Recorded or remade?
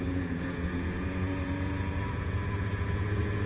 remade